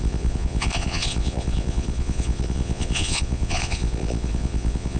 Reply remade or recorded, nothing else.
remade